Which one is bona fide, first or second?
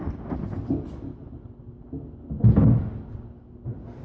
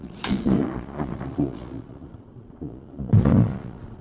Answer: first